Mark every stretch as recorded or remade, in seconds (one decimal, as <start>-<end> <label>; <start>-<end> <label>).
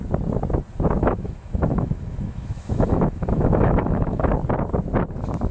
0.0-1.0 recorded; 1.0-4.3 remade; 4.3-5.5 recorded